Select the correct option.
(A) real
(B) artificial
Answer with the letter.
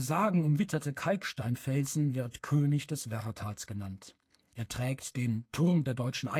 B